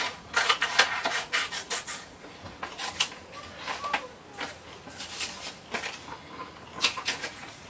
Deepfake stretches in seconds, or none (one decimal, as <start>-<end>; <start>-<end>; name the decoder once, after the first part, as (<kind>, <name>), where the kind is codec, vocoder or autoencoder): 0.0-3.2 (vocoder, Vocos); 6.8-7.7